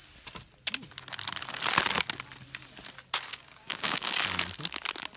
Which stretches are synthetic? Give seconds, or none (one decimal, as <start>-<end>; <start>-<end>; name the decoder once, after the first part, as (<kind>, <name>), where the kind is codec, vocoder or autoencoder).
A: 3.3-4.2 (codec, DAC)